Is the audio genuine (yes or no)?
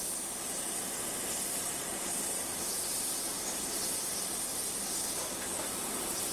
no